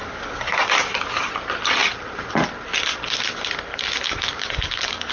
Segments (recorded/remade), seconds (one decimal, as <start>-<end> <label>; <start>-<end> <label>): 0.0-1.3 remade; 1.3-3.7 recorded; 3.7-5.1 remade